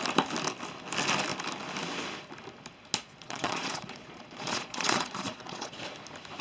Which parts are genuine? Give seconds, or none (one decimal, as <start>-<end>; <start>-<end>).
0.0-3.0; 5.8-6.4